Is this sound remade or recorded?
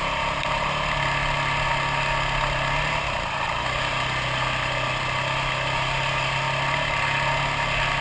recorded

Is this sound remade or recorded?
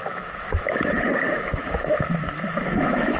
remade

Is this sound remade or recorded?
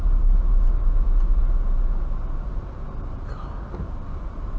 recorded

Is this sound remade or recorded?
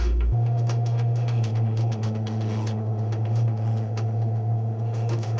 remade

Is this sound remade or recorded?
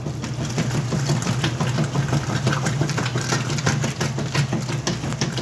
recorded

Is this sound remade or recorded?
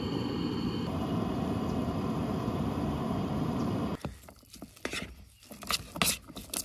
recorded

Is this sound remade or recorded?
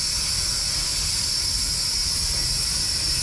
recorded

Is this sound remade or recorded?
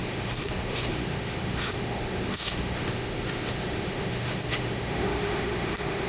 remade